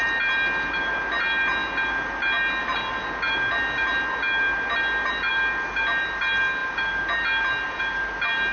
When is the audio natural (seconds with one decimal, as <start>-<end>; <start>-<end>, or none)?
0.0-8.5